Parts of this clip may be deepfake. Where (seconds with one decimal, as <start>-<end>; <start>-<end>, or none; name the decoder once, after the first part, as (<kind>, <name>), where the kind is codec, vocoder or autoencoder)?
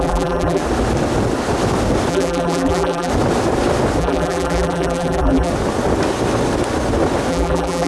0.0-0.6 (vocoder, BigVGAN v2); 2.1-3.1; 4.0-5.5; 7.3-7.9